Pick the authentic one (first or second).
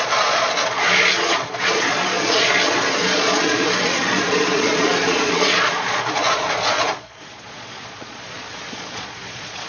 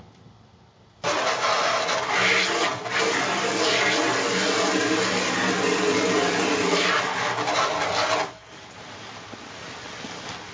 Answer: second